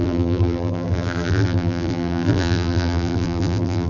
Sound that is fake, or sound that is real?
fake